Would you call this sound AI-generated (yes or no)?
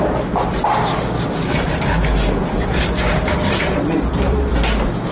no